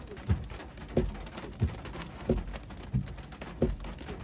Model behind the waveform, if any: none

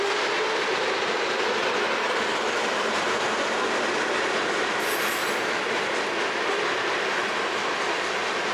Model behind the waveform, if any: none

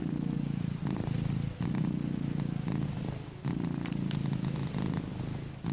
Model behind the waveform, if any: none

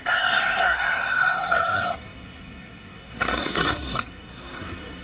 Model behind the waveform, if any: codec, SNAC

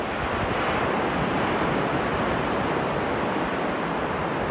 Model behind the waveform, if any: none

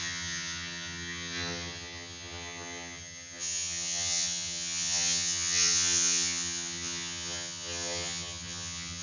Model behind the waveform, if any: vocoder, HiFi-GAN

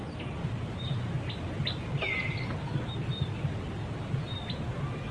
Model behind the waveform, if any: none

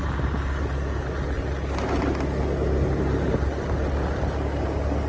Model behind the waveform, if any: none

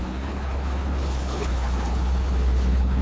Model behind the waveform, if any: codec, HILCodec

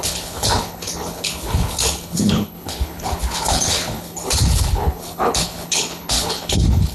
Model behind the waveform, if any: codec, HILCodec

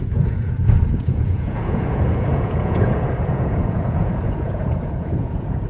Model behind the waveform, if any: vocoder, Vocos